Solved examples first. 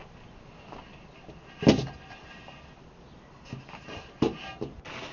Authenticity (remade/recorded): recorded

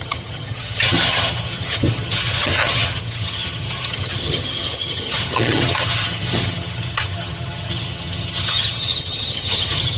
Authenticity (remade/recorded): remade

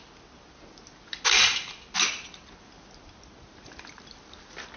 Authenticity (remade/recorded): recorded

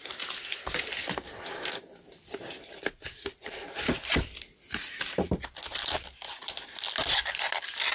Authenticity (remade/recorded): recorded